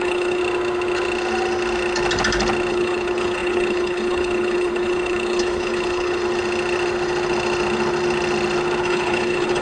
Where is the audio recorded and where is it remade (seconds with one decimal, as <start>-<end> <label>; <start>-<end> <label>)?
0.0-0.4 remade; 0.4-2.7 recorded; 2.7-6.2 remade; 6.2-8.8 recorded; 8.8-9.6 remade